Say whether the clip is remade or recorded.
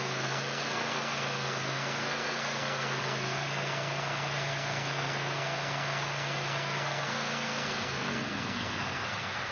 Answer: remade